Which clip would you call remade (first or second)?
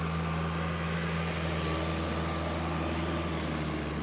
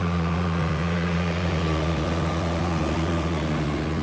second